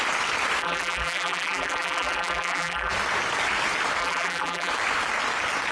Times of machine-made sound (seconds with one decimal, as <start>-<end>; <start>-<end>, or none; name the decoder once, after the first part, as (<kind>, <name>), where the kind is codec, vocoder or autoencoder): 0.6-2.9 (vocoder, BigVGAN v2); 4.0-4.7